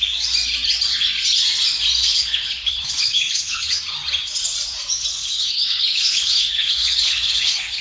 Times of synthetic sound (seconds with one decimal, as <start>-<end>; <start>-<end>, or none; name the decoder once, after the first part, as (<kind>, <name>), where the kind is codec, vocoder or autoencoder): 2.0-3.8 (codec, HILCodec); 5.1-7.8